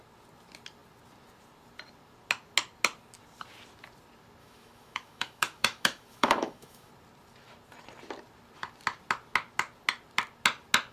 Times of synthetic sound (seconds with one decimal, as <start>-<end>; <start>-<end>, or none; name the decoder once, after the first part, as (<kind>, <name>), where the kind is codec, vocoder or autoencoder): 4.4-6.9 (autoencoder, DAC-VAE)